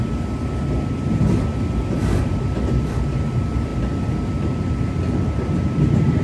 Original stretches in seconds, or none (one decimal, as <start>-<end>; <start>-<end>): 0.0-6.2